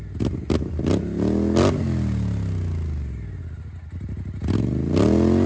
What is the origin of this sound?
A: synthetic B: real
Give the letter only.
B